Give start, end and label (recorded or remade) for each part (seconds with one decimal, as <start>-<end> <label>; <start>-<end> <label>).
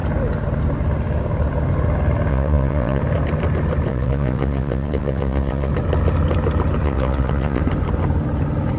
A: 0.0-2.3 recorded; 2.3-3.0 remade; 3.0-3.9 recorded; 3.9-5.7 remade; 5.7-6.8 recorded; 6.8-7.6 remade; 7.6-8.8 recorded